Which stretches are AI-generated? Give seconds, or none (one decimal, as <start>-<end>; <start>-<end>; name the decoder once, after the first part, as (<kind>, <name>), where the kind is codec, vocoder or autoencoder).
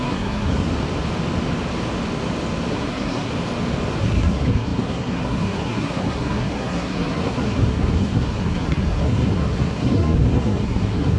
0.0-0.7 (codec, SNAC); 2.7-3.3; 4.0-11.2